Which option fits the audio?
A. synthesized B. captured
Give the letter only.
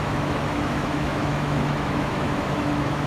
A